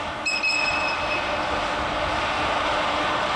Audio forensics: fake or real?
real